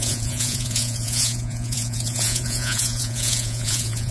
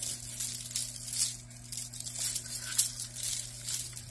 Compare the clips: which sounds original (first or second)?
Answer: second